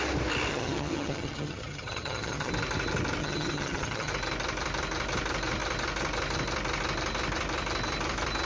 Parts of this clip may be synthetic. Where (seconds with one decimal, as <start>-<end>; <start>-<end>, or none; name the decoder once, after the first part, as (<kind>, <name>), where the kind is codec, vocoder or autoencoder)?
0.5-2.5 (vocoder, HiFi-GAN); 3.2-4.1